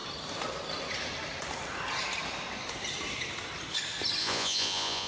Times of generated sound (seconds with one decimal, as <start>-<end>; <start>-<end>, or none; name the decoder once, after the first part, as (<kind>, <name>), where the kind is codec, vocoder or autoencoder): 4.2-5.1 (vocoder, Vocos)